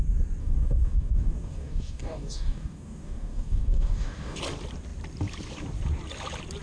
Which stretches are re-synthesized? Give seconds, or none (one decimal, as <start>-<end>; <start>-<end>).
0.4-4.4